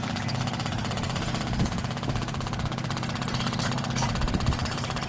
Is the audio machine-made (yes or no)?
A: no